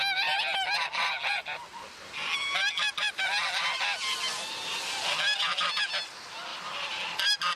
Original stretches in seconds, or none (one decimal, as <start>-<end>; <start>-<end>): 0.0-6.5; 7.0-7.6